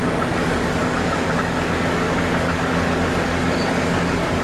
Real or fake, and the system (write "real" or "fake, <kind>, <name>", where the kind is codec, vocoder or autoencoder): fake, codec, DAC